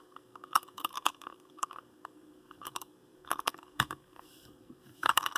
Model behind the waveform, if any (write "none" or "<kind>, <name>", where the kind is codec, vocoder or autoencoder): codec, SNAC